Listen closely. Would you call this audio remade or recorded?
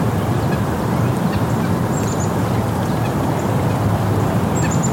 remade